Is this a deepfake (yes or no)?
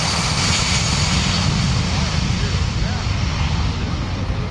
no